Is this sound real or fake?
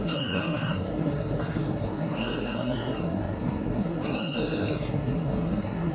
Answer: fake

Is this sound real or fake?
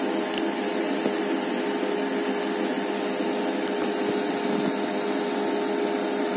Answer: real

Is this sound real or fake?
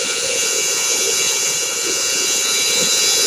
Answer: fake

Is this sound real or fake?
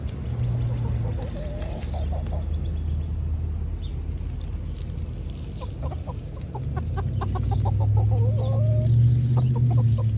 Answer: real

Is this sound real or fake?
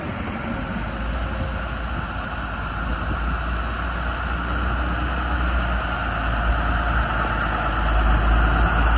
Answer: real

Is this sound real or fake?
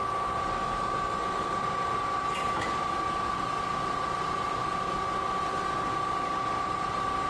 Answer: real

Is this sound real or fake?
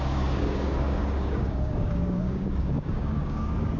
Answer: fake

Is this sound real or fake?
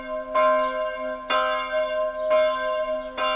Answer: real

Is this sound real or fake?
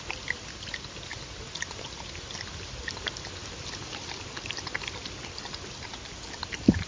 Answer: real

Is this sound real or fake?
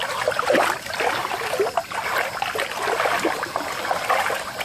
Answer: real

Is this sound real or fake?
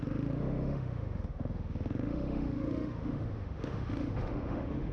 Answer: fake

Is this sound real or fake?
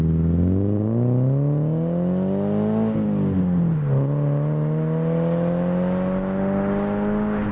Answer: real